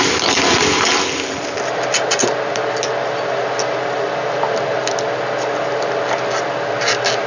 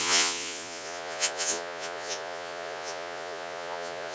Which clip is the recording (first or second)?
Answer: first